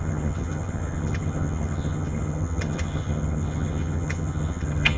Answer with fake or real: fake